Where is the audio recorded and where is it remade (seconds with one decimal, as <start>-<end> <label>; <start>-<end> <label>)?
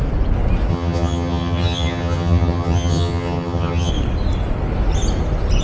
0.0-0.7 recorded; 0.7-3.9 remade; 3.9-5.6 recorded